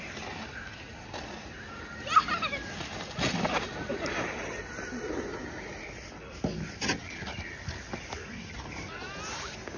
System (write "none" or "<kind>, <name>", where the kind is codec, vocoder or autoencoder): none